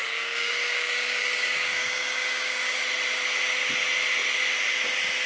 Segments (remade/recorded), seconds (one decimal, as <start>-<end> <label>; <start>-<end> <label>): 0.0-2.8 remade; 2.8-5.3 recorded